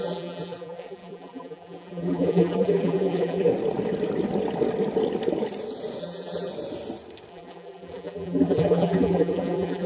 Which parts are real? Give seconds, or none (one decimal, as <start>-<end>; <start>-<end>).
3.5-6.0; 6.5-7.3

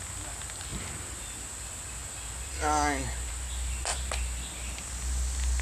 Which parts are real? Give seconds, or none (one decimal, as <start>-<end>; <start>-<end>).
0.0-5.6